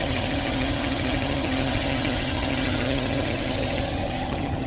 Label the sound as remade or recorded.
remade